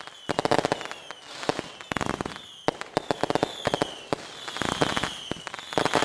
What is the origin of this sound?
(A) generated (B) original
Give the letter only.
B